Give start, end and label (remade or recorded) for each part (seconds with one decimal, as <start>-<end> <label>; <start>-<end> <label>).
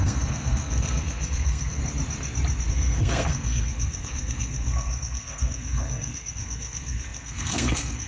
0.0-1.8 remade; 1.8-2.7 recorded; 2.7-8.1 remade